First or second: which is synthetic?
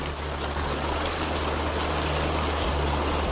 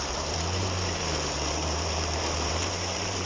second